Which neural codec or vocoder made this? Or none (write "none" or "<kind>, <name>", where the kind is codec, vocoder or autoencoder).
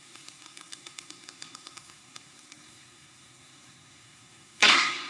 codec, SNAC